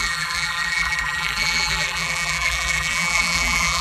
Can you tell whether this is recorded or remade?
remade